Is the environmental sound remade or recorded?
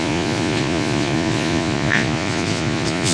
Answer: remade